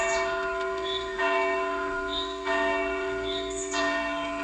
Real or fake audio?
fake